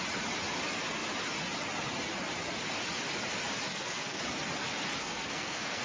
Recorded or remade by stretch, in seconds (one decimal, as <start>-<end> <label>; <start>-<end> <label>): 0.0-3.7 recorded; 3.7-4.2 remade; 4.2-5.0 recorded; 5.0-5.8 remade